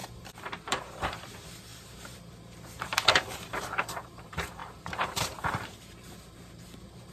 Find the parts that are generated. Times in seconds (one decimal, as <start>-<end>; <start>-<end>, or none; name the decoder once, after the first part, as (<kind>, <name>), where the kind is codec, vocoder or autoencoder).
0.0-7.1 (vocoder, BigVGAN v2)